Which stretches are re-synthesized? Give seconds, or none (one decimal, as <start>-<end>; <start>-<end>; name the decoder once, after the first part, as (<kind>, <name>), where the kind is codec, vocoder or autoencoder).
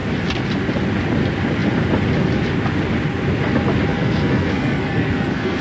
3.9-5.6 (codec, SNAC)